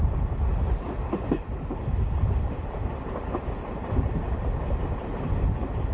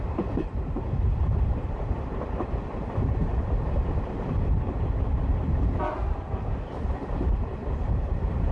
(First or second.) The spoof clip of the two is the second